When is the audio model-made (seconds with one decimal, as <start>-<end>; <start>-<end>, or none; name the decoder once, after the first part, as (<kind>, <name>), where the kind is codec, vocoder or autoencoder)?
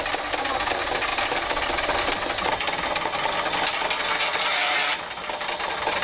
none